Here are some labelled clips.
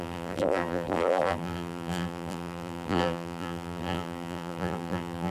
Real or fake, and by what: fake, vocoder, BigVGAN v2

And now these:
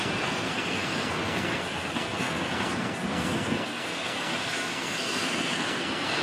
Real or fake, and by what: fake, codec, SNAC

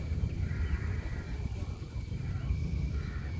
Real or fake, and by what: fake, vocoder, BigVGAN v2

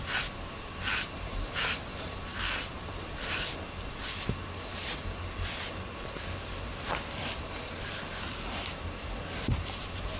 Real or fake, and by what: real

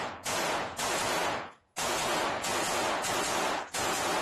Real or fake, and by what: fake, vocoder, Vocos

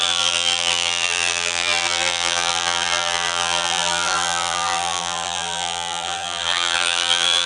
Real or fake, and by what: fake, vocoder, BigVGAN v2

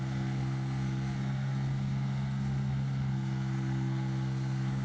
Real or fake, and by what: fake, codec, SNAC